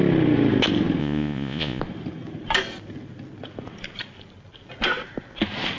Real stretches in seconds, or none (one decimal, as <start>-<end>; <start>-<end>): 0.0-1.0; 1.8-5.8